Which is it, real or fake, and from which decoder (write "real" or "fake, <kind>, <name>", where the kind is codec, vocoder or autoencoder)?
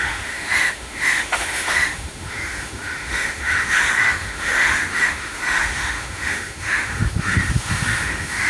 fake, autoencoder, DAC-VAE